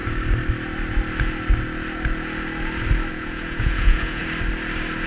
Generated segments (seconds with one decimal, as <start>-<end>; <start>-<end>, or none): 3.1-4.2